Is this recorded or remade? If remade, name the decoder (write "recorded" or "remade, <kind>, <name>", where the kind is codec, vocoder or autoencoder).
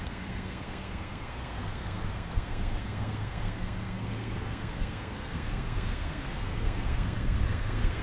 remade, codec, SNAC